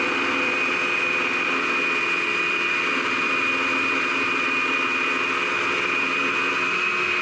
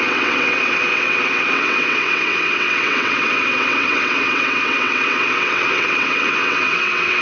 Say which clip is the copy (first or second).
second